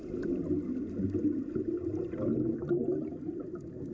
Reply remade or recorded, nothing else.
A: recorded